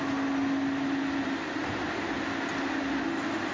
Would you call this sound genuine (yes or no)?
yes